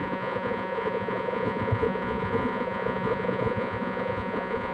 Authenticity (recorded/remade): remade